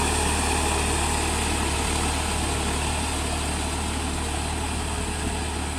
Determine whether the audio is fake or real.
real